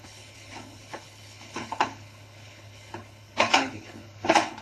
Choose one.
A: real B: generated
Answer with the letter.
B